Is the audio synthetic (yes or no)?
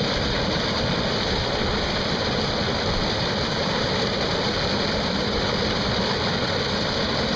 no